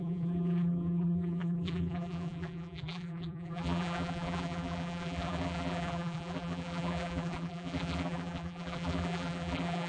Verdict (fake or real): fake